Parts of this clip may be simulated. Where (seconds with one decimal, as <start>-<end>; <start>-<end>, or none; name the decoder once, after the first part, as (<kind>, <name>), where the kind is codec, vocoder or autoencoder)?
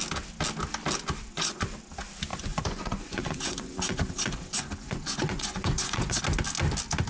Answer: 1.3-1.8 (vocoder, Vocos); 2.3-6.2